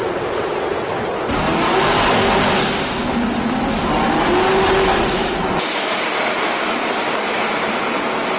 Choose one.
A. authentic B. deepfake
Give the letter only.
A